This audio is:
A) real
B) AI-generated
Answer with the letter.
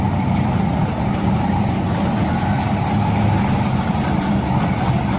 A